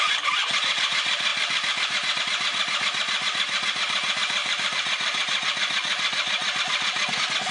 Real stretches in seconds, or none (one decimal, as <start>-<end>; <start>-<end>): 0.0-7.5